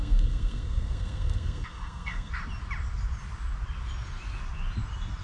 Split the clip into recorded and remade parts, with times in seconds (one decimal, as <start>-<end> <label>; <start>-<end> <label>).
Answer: 0.0-2.3 remade; 2.3-5.2 recorded